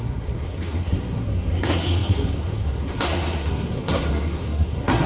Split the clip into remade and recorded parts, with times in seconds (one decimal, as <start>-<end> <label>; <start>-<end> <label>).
0.0-5.1 remade